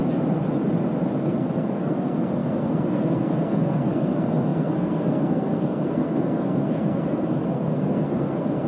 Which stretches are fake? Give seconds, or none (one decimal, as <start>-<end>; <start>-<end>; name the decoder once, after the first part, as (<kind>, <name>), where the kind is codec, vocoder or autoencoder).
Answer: 1.2-8.7 (codec, SNAC)